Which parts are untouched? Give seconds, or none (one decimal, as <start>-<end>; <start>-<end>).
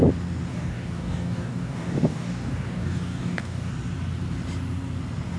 0.0-0.5; 3.7-5.4